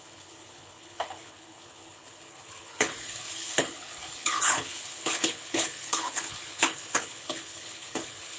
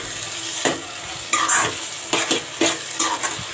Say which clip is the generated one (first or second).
first